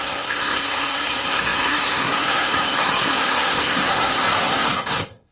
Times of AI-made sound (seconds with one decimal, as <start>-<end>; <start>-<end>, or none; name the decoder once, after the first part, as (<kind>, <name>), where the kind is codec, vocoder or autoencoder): 0.0-5.3 (codec, SNAC)